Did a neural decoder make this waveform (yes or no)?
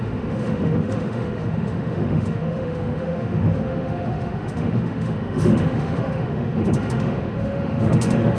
yes